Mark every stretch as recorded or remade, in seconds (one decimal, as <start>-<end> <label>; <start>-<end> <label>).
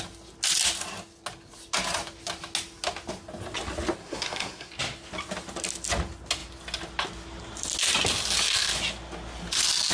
0.0-4.0 recorded; 4.0-4.7 remade; 4.7-9.9 recorded